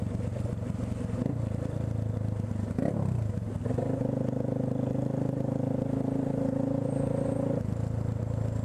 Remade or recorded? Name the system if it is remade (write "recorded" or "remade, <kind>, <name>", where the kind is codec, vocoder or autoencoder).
recorded